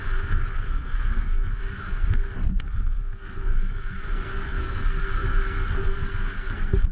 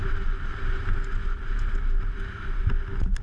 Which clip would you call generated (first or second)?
first